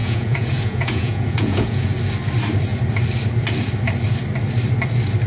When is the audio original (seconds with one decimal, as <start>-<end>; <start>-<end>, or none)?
1.9-5.3